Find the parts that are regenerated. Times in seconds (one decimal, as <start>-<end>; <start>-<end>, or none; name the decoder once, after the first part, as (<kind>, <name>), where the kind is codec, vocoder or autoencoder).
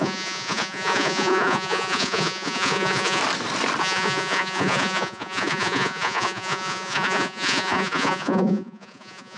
0.0-3.2 (vocoder, Vocos); 3.8-9.4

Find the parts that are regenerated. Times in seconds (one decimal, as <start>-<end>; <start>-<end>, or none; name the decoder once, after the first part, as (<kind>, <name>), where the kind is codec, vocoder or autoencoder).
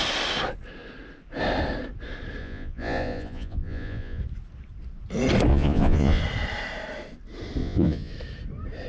2.4-4.2 (vocoder, Vocos); 5.5-6.2; 7.6-8.1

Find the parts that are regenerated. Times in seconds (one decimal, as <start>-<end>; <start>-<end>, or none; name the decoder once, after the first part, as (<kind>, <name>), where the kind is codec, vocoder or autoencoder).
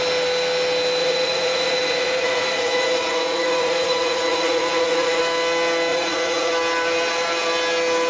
1.0-5.2 (vocoder, Vocos); 5.9-6.5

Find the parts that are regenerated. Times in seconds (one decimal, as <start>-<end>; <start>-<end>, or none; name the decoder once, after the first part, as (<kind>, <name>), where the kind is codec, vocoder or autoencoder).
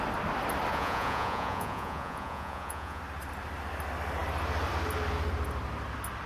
0.7-3.0 (vocoder, Vocos)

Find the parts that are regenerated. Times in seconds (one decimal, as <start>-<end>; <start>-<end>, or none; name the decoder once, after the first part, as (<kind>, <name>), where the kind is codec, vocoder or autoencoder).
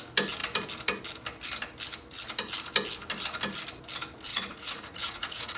4.3-5.6 (vocoder, Vocos)